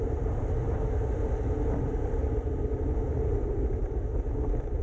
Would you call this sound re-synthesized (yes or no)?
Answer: no